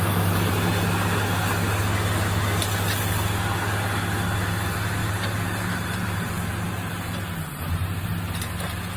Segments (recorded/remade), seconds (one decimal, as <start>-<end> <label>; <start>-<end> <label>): 0.0-0.7 remade; 0.7-4.4 recorded; 4.4-8.1 remade; 8.1-9.0 recorded